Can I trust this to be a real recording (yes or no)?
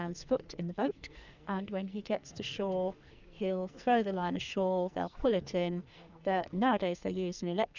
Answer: no